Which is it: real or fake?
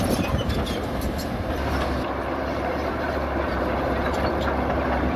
fake